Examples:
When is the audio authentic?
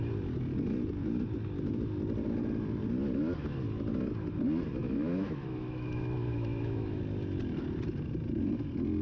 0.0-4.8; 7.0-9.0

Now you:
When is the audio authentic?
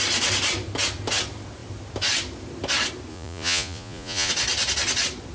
0.0-3.1; 4.3-5.3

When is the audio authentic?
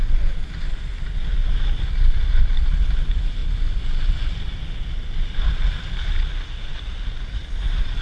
0.0-1.4; 2.5-7.4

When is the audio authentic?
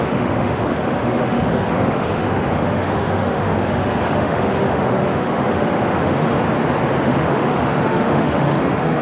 6.4-7.0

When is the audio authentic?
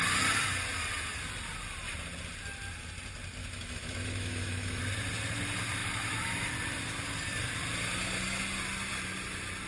0.0-3.4; 4.8-5.8; 6.5-9.7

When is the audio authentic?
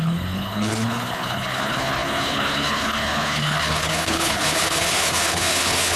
none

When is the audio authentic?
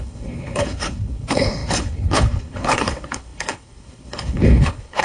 none